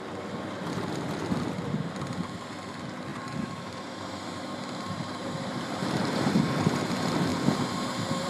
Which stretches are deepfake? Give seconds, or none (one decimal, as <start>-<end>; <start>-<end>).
3.1-6.8; 7.3-8.3